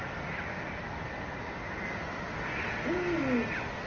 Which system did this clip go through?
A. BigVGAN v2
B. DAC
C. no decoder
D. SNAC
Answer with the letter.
C